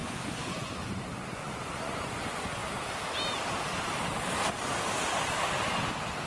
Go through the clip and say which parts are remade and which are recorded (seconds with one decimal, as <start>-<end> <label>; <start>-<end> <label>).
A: 0.0-2.6 remade; 2.6-6.3 recorded